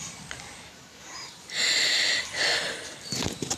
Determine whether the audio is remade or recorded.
recorded